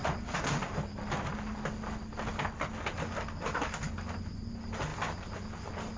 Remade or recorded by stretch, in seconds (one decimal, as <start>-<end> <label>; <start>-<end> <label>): 0.0-6.0 recorded